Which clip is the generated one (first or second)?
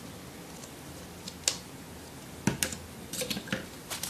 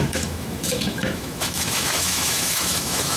second